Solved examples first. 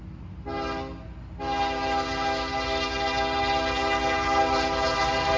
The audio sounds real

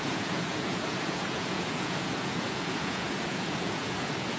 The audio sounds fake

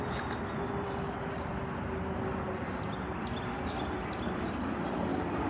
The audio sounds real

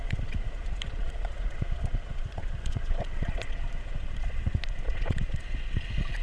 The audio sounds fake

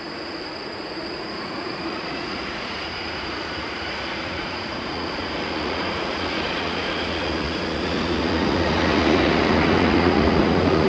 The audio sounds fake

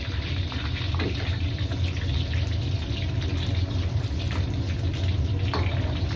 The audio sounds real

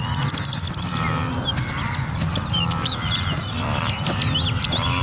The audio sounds real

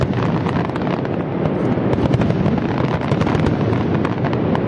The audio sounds real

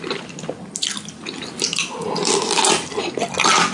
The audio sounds real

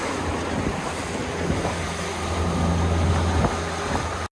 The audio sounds real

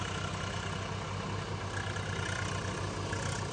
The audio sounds real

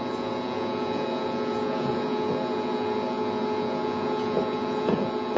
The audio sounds fake